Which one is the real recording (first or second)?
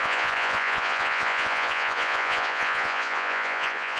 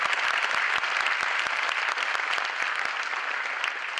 second